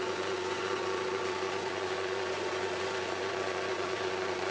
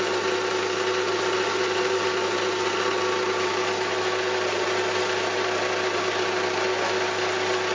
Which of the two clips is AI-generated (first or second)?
first